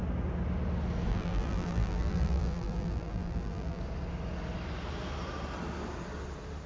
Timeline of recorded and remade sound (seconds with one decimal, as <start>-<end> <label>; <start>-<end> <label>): 0.0-1.1 recorded; 1.1-3.8 remade; 3.8-6.7 recorded

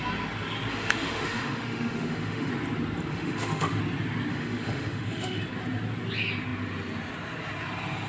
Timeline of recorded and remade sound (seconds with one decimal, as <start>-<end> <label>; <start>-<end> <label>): 0.0-0.7 recorded; 0.7-2.5 remade; 2.5-3.1 recorded; 3.1-3.8 remade; 3.8-4.3 recorded; 4.3-5.4 remade; 5.4-8.1 recorded

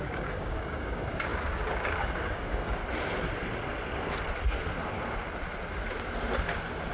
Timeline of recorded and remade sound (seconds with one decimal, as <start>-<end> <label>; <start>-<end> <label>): 0.0-2.8 remade; 2.8-6.9 recorded

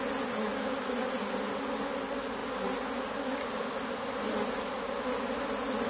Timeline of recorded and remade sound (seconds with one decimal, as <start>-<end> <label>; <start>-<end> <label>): 0.0-5.9 recorded